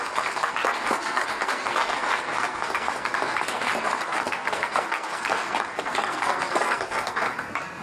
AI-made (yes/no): yes